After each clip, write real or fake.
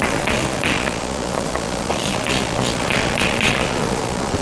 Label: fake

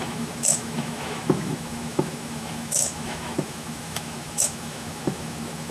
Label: fake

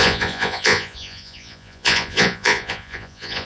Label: fake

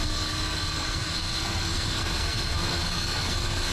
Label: fake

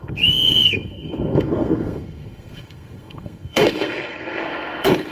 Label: fake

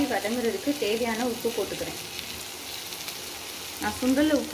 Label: real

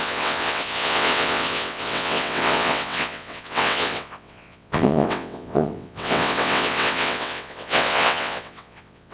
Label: fake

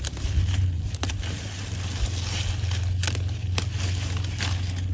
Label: real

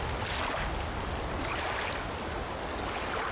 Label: real